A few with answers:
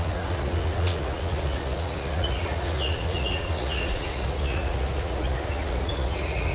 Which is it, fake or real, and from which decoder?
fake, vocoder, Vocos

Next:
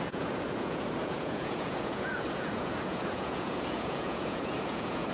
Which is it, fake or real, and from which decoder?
fake, vocoder, Vocos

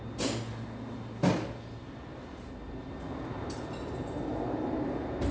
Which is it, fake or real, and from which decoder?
real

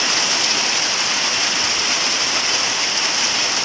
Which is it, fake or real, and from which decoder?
real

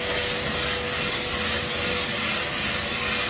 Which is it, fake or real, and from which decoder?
real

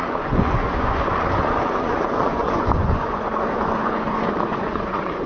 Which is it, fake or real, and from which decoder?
fake, vocoder, Vocos